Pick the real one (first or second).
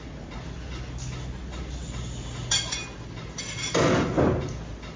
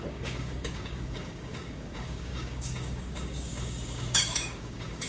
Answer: first